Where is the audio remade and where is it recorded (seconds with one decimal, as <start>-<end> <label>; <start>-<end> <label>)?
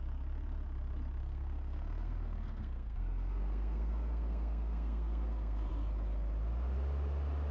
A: 0.0-1.2 recorded; 1.2-5.7 remade; 5.7-7.5 recorded